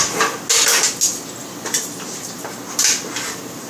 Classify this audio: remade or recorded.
recorded